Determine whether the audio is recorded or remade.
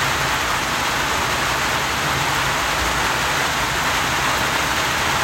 recorded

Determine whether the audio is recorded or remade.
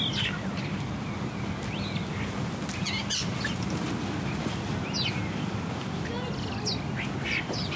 recorded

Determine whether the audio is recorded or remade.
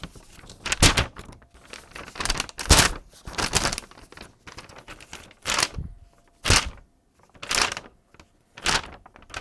recorded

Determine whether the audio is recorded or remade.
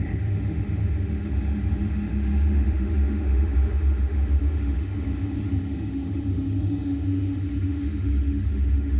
remade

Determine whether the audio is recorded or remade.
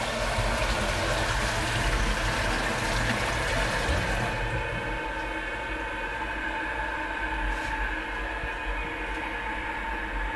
recorded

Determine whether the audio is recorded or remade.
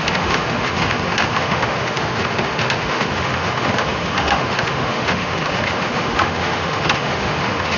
remade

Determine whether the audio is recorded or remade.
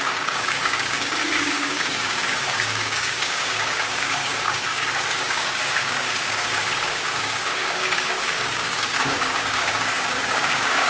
remade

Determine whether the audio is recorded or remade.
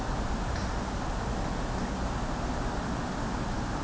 recorded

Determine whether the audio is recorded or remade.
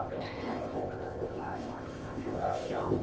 remade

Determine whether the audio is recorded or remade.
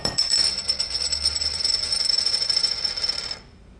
remade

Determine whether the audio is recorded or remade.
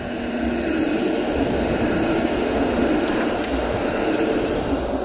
recorded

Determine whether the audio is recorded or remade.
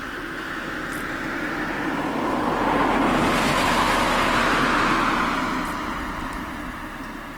recorded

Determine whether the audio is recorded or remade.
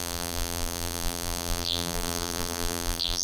remade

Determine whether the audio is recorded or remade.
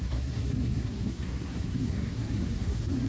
remade